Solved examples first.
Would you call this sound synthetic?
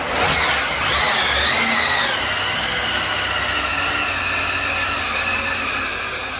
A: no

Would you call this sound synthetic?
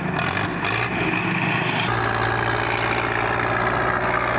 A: no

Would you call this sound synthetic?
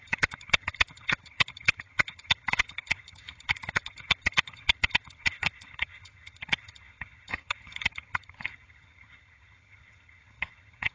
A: yes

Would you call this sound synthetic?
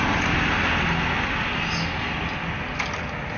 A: no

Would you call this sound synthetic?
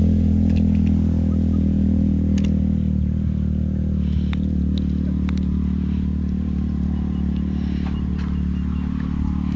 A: no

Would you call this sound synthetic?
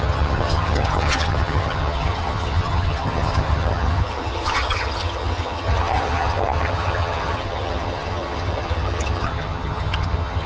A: yes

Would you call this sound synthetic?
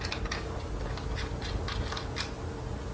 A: no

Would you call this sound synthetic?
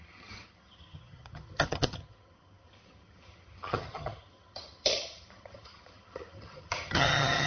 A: yes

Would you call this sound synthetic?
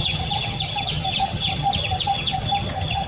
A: yes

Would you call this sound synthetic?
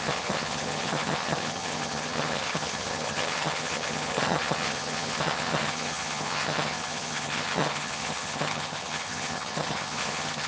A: yes